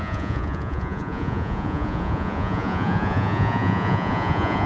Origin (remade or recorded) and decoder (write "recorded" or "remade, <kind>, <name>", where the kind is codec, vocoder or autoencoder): remade, vocoder, Vocos